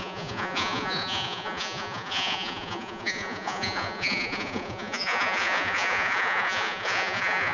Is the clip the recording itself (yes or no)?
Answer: no